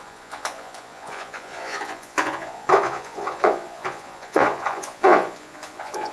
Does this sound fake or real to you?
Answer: fake